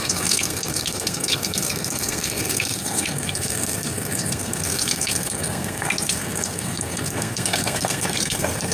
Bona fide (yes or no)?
no